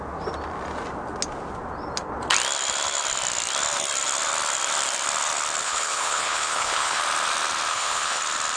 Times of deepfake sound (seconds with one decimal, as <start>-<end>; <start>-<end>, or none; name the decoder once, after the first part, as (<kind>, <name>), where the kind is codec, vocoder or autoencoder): 5.6-7.0 (codec, HILCodec); 7.7-8.2